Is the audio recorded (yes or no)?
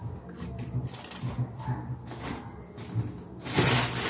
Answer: yes